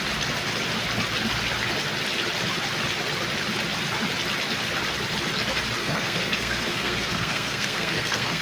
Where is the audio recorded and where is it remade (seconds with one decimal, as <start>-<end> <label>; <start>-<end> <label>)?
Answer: 0.0-5.8 recorded; 5.8-8.4 remade